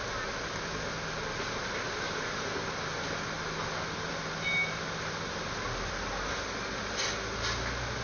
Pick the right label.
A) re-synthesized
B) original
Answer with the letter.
B